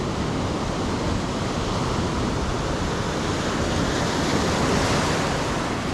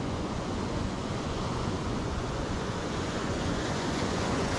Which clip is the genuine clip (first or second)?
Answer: first